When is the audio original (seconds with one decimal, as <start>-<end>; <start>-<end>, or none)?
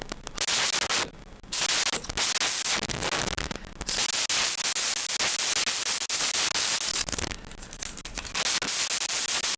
0.0-9.6